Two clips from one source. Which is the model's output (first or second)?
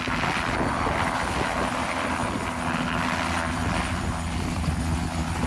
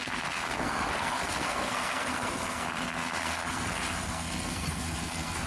second